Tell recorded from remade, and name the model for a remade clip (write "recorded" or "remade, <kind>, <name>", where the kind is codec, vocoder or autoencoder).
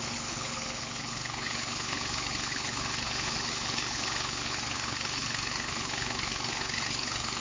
remade, codec, HILCodec